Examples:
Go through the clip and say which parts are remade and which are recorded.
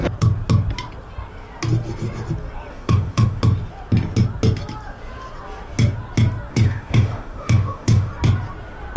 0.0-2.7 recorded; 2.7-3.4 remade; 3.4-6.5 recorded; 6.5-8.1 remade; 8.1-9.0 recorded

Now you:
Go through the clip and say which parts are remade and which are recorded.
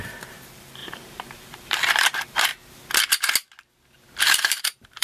0.0-2.5 remade; 2.5-4.3 recorded; 4.3-5.0 remade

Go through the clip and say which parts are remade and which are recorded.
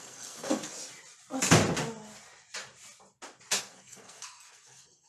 0.0-0.7 remade; 0.7-3.6 recorded; 3.6-5.1 remade